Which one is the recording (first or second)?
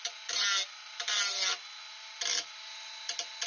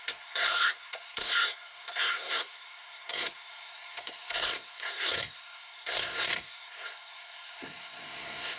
first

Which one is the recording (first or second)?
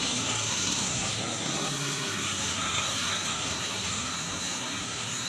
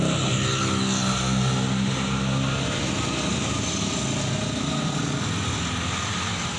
second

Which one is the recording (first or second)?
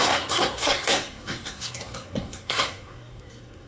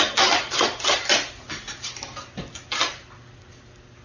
second